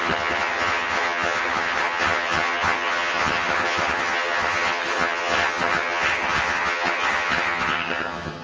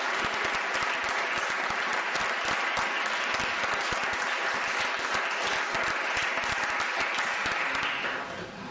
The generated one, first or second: first